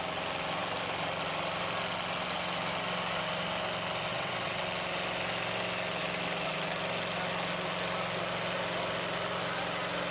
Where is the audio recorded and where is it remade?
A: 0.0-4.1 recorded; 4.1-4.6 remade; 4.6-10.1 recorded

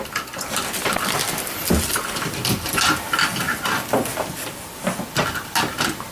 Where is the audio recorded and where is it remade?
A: 0.0-6.1 recorded

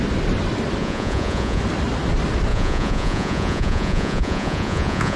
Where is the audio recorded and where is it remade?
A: 0.0-0.8 recorded; 0.8-1.6 remade; 1.6-2.5 recorded; 2.5-5.2 remade

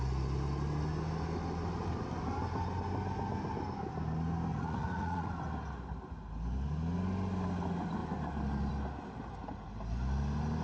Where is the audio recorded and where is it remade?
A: 0.0-4.5 recorded; 4.5-5.3 remade; 5.3-10.6 recorded

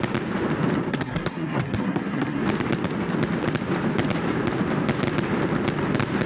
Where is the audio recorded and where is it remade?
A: 0.0-0.9 recorded; 0.9-2.4 remade; 2.4-6.3 recorded

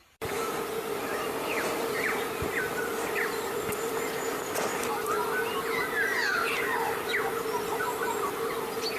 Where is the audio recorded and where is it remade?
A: 0.0-4.7 remade; 4.7-6.8 recorded; 6.8-9.0 remade